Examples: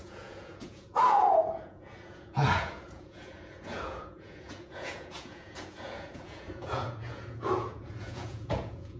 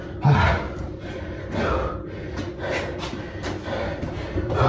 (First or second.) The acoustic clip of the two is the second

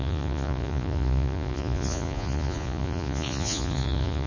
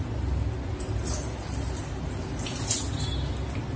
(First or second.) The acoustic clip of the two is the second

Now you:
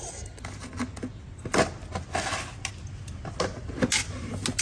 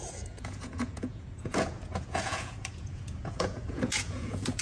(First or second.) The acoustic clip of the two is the first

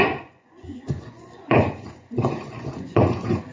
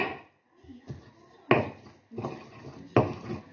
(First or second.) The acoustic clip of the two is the second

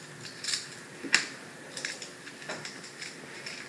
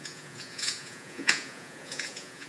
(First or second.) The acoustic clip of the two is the first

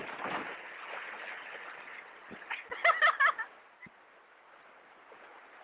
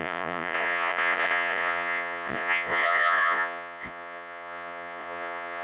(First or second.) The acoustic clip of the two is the first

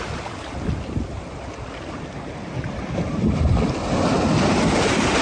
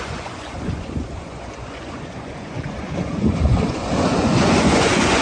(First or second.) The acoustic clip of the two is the first